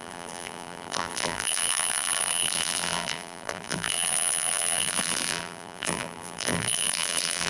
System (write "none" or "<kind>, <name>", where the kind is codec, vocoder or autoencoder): vocoder, BigVGAN v2